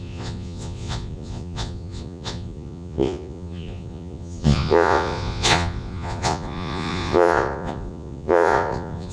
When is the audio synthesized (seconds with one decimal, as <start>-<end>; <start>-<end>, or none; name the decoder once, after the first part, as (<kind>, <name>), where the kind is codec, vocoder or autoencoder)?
0.0-9.1 (vocoder, Vocos)

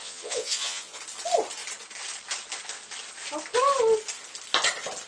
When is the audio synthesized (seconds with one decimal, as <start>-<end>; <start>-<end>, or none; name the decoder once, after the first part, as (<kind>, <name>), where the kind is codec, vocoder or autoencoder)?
0.0-1.0 (vocoder, Vocos)

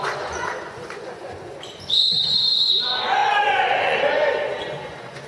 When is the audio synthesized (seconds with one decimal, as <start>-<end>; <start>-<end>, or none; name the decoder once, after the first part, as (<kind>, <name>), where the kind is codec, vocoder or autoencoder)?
0.0-5.3 (vocoder, Vocos)

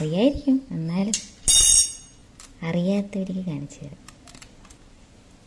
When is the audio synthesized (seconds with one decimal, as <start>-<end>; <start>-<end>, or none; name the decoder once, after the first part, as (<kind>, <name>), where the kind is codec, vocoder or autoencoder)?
none

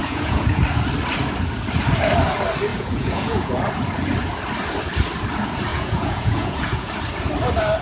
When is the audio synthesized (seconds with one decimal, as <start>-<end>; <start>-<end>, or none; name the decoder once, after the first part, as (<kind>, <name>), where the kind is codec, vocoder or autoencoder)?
0.0-0.6 (vocoder, Vocos); 2.7-3.6; 5.7-6.9

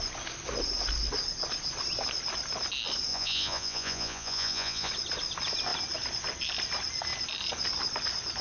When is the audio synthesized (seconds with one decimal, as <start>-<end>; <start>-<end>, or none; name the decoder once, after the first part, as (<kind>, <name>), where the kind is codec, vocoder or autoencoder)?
3.1-4.9 (vocoder, Vocos)

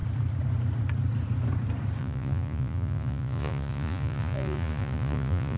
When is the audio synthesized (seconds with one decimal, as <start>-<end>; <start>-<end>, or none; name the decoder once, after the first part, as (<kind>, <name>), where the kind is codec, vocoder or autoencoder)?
2.0-5.6 (vocoder, Vocos)